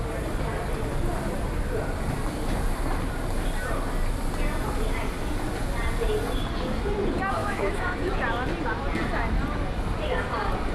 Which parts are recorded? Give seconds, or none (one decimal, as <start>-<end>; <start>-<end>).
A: 0.0-7.4; 8.1-10.7